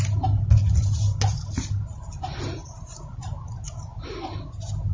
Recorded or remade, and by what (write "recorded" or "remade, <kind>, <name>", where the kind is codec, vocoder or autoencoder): recorded